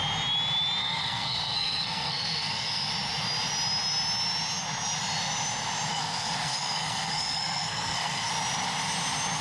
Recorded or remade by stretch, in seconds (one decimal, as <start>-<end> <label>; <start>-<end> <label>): 0.0-0.8 recorded; 0.8-2.9 remade; 2.9-5.9 recorded; 5.9-8.3 remade; 8.3-9.4 recorded